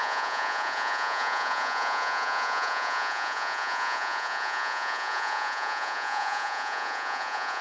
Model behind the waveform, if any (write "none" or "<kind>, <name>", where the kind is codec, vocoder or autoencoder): vocoder, Vocos